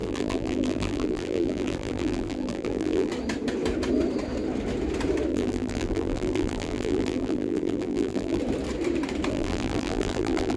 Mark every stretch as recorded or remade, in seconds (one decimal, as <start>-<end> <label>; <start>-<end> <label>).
0.0-3.1 remade; 3.1-5.3 recorded; 5.3-8.4 remade; 8.4-9.3 recorded; 9.3-10.6 remade